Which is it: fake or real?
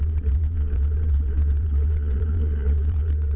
fake